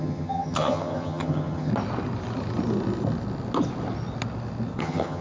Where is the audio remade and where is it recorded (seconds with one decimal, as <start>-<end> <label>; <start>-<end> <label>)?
0.0-1.7 remade; 1.7-4.8 recorded; 4.8-5.2 remade